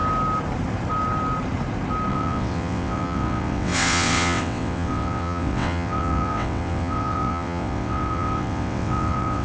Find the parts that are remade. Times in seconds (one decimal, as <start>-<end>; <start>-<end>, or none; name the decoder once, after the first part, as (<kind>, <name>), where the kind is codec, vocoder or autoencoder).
2.1-9.4 (vocoder, WaveNeXt)